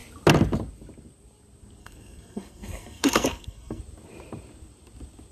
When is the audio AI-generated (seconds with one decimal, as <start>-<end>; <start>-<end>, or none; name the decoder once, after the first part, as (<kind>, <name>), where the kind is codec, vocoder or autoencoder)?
1.8-3.8 (codec, SNAC)